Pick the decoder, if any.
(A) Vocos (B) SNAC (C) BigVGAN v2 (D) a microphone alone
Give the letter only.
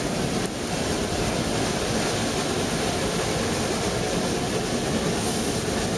D